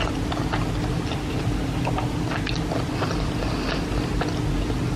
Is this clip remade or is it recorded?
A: recorded